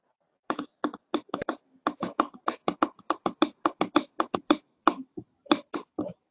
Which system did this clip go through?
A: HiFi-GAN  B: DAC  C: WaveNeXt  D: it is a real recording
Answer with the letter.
D